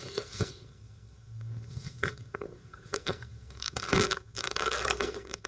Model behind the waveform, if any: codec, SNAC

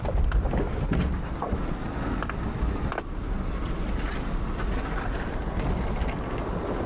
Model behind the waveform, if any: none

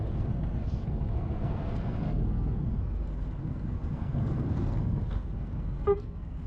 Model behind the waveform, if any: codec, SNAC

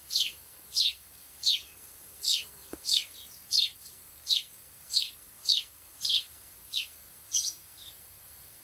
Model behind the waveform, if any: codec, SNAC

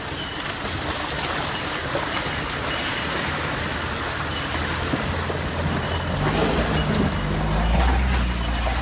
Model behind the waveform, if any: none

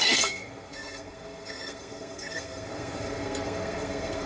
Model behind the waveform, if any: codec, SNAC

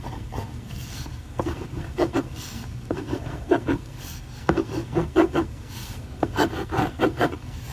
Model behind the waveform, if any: codec, SNAC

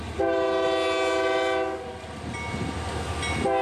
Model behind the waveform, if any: none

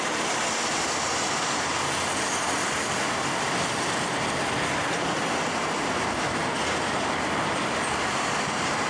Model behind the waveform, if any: none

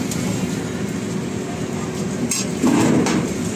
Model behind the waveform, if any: none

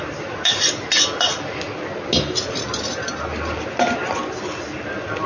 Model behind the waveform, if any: none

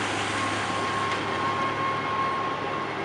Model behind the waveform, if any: none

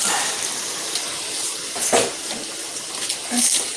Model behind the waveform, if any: none